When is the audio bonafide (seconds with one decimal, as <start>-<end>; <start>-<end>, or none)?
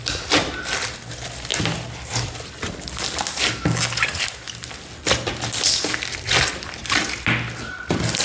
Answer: 0.0-8.2